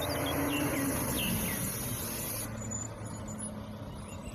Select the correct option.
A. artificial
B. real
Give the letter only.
B